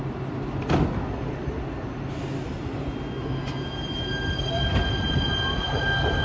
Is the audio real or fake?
real